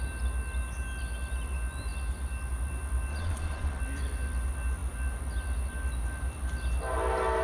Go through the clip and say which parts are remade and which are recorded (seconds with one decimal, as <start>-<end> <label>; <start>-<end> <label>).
0.0-3.1 recorded; 3.1-3.8 remade; 3.8-7.4 recorded